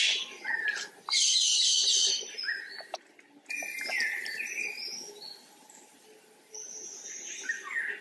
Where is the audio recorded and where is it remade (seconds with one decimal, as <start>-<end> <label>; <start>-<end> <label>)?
0.0-8.0 recorded